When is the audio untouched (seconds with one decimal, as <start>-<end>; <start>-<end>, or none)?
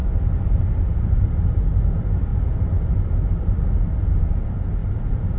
0.0-5.4